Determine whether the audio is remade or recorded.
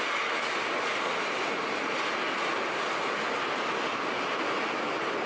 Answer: recorded